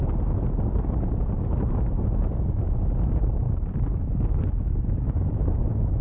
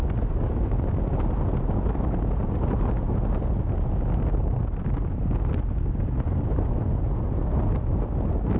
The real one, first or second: second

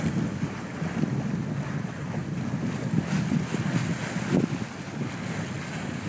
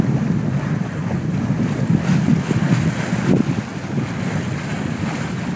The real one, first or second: first